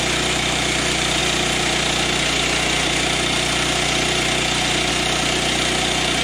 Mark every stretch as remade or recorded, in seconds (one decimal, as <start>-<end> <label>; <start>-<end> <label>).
0.0-6.2 recorded